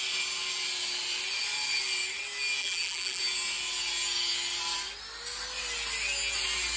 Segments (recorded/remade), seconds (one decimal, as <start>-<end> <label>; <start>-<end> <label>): 0.0-2.6 recorded; 2.6-3.2 remade; 3.2-6.8 recorded

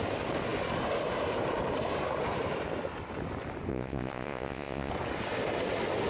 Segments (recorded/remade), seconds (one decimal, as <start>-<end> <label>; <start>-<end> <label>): 0.0-3.7 recorded; 3.7-4.9 remade; 4.9-6.1 recorded

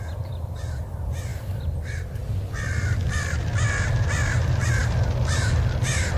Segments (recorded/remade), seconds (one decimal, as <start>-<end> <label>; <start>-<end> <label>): 0.0-6.2 recorded

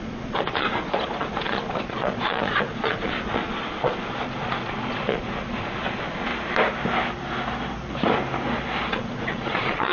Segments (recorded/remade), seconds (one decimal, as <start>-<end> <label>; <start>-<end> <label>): 0.0-6.3 remade; 6.3-8.9 recorded; 8.9-9.9 remade

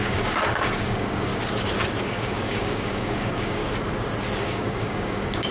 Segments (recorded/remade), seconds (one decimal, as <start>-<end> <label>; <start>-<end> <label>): 0.0-1.3 remade; 1.3-2.0 recorded; 2.0-3.6 remade; 3.6-4.4 recorded; 4.4-5.5 remade